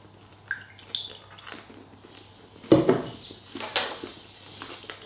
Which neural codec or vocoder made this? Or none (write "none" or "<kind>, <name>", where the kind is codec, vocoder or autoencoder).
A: none